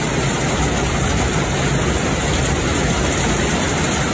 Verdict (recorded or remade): recorded